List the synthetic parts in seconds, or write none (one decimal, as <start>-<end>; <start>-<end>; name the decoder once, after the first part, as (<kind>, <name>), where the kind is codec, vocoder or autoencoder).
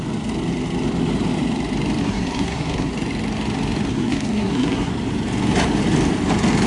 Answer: 2.0-2.9 (codec, SNAC); 3.9-4.9